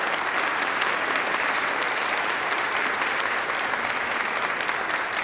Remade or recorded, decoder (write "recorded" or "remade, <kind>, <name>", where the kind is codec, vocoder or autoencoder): recorded